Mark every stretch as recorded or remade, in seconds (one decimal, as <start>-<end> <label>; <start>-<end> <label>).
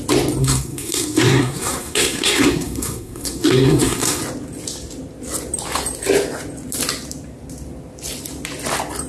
0.0-0.4 recorded; 0.4-4.2 remade; 4.2-9.1 recorded